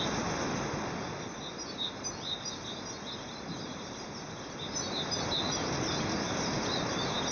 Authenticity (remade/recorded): recorded